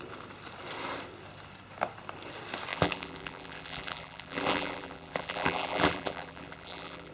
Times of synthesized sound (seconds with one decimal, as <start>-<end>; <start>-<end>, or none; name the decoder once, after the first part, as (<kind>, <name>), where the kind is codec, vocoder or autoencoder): 2.7-7.1 (vocoder, BigVGAN v2)